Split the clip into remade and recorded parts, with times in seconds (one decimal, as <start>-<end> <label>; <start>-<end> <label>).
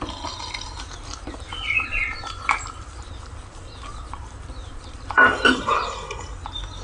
0.0-1.9 recorded; 1.9-6.0 remade; 6.0-6.8 recorded